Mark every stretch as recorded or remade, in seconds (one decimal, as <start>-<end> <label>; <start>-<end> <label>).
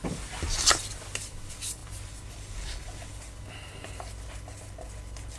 0.0-5.4 recorded